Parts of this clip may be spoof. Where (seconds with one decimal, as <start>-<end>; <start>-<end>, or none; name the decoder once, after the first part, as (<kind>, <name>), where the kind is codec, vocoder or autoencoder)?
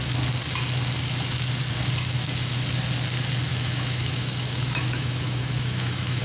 3.5-6.2 (autoencoder, DAC-VAE)